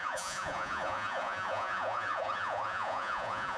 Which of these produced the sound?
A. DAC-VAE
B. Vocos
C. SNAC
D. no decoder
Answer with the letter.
B